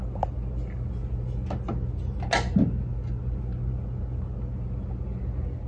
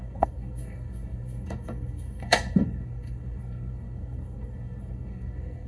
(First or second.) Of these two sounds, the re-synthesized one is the second